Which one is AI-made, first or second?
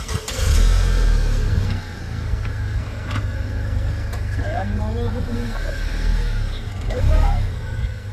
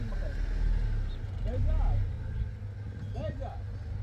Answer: first